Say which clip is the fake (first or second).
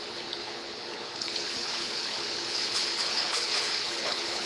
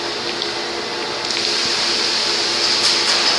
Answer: first